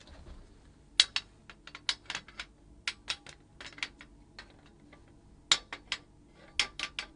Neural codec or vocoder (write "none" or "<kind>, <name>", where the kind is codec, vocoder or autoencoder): none